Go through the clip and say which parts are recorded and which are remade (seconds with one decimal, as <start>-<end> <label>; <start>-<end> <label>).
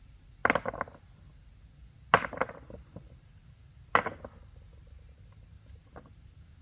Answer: 0.0-6.6 recorded